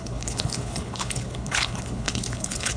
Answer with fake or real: fake